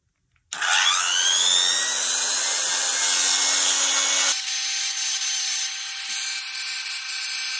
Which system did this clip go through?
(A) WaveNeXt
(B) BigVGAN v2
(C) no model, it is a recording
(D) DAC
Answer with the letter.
C